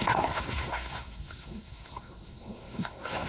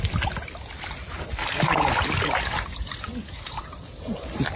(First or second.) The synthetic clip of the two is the first